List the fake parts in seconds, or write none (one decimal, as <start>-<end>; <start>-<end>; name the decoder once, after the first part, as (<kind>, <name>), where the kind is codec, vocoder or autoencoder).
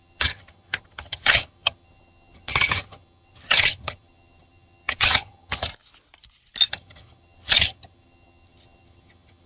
0.0-5.7 (vocoder, HiFi-GAN); 6.7-9.5